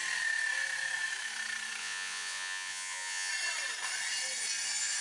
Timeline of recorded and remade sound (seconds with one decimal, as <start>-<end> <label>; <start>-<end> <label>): 0.0-1.8 recorded; 1.8-3.3 remade; 3.3-5.0 recorded